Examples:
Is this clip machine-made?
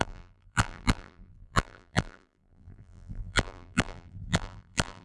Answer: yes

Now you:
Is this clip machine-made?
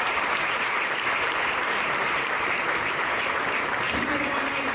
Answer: yes